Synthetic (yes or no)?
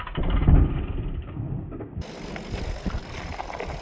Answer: no